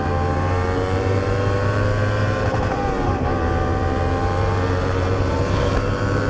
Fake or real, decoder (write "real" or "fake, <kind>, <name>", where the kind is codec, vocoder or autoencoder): fake, vocoder, BigVGAN v2